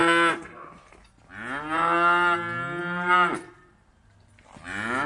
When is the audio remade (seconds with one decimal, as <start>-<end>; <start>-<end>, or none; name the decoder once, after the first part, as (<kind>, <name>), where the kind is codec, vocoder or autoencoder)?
none